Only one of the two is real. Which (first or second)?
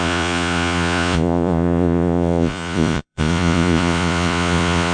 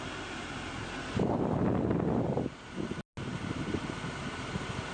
second